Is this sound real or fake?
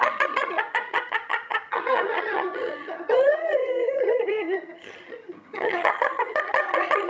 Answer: fake